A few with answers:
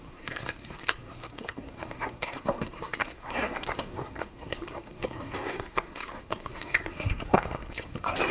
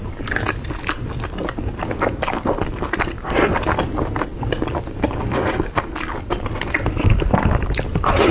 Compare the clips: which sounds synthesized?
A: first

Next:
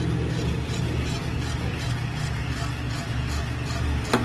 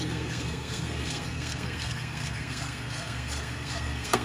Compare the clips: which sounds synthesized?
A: second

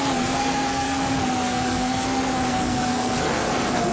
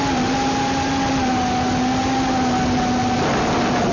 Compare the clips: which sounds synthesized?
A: first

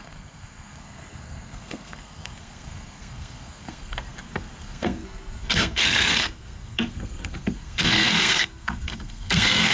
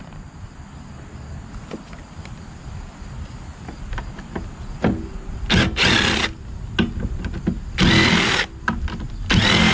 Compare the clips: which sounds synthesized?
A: first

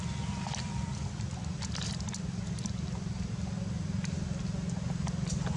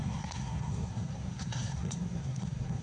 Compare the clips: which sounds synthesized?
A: second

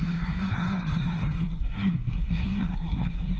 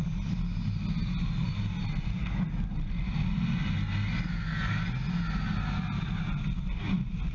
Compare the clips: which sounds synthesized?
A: first